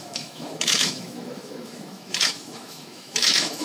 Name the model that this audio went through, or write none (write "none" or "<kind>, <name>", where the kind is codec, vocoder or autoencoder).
autoencoder, DAC-VAE